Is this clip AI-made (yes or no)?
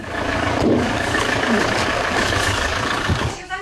yes